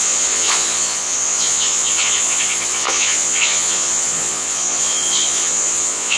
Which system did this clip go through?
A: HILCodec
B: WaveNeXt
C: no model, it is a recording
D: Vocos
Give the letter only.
D